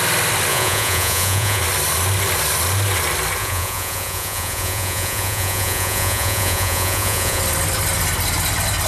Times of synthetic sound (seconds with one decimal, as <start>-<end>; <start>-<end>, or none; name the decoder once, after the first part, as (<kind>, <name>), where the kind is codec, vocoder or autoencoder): 0.5-1.6 (vocoder, Vocos); 3.4-7.4